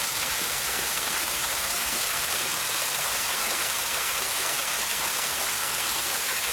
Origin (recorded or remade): remade